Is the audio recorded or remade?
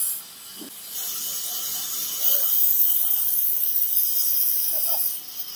recorded